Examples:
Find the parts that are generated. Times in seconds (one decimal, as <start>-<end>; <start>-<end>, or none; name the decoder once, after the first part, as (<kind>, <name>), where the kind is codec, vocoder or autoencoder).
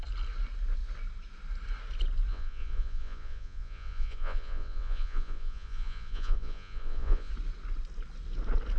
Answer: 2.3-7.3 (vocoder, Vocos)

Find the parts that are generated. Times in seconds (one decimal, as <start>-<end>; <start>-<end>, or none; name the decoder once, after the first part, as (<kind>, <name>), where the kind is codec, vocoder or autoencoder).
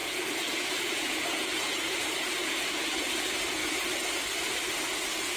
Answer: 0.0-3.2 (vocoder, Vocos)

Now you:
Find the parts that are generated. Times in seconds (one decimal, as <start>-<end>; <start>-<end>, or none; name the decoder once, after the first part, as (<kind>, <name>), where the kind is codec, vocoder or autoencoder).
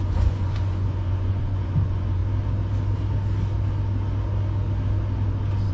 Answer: 0.0-2.2 (vocoder, Vocos)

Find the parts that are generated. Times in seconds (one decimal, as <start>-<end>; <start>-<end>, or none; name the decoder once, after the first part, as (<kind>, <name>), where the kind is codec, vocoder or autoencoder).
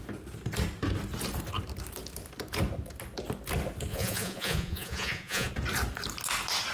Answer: 3.9-5.5 (vocoder, Vocos)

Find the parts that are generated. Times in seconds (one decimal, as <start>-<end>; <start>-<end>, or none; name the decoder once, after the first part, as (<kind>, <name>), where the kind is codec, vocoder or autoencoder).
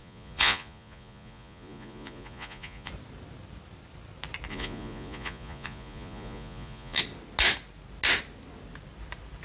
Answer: 0.0-2.9 (vocoder, Vocos); 4.5-7.0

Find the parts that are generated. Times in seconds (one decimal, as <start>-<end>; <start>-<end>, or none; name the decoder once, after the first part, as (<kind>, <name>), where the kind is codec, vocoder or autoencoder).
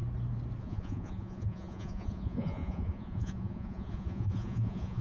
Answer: 0.6-5.0 (vocoder, Vocos)